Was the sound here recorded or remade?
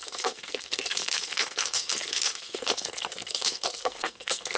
remade